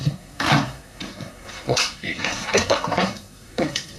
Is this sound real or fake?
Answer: fake